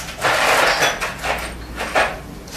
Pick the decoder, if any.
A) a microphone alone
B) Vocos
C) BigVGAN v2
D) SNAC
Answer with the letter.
A